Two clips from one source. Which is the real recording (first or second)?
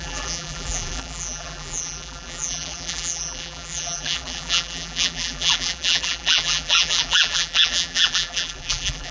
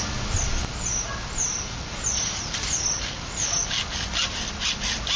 second